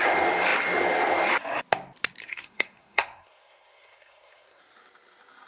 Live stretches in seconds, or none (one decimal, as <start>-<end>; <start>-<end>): 0.0-2.2; 4.6-5.5